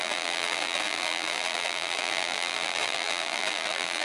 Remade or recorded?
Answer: remade